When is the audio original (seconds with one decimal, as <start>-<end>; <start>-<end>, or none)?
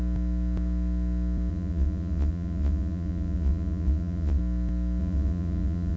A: 0.0-1.5; 4.4-5.0